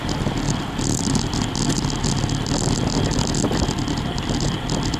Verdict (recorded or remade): recorded